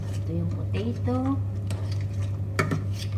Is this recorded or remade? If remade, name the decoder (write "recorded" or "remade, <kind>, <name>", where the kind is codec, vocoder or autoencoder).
recorded